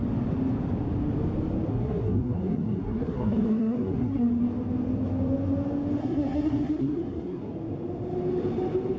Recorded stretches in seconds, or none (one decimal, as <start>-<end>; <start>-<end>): 0.0-1.7; 4.4-6.0; 7.5-9.0